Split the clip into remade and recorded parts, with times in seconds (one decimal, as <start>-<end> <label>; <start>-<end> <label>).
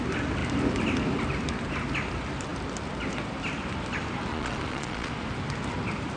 0.0-4.3 recorded; 4.3-5.1 remade; 5.1-6.2 recorded